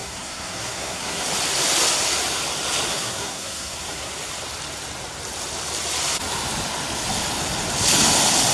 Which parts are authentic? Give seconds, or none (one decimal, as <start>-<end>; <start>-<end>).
1.3-2.9; 4.1-8.5